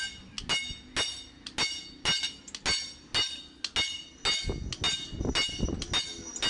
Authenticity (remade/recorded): recorded